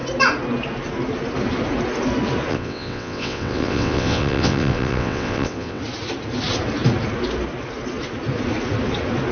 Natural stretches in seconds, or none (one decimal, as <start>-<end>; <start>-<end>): 0.0-2.5; 5.8-9.3